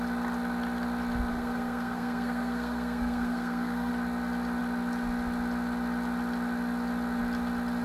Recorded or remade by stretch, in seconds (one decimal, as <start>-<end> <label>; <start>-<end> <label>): 0.0-1.3 recorded; 1.3-3.9 remade; 3.9-7.8 recorded